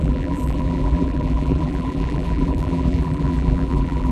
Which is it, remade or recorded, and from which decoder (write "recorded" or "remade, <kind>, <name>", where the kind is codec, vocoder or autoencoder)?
remade, vocoder, BigVGAN v2